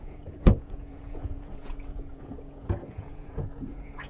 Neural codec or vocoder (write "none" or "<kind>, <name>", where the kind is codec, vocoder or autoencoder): vocoder, Vocos